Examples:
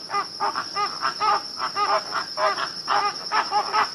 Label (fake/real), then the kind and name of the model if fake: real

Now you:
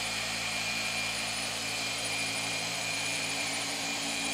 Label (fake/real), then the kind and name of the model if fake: fake, vocoder, BigVGAN v2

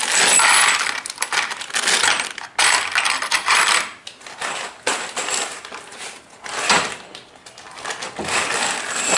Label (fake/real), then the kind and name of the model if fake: real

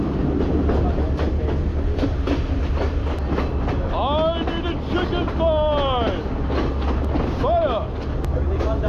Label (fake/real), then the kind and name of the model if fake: real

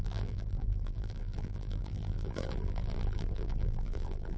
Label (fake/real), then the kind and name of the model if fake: fake, vocoder, BigVGAN v2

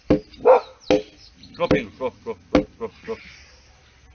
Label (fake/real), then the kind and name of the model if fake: real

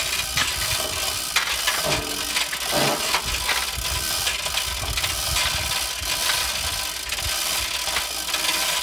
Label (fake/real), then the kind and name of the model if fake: real